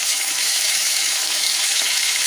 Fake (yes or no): yes